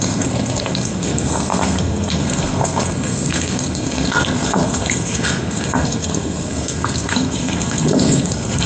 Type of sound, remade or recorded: remade